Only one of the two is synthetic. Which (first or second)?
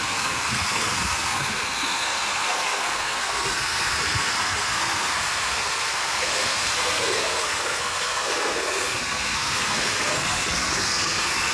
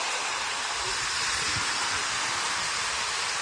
first